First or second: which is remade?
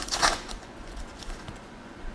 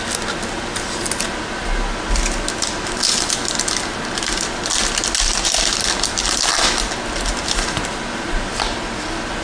first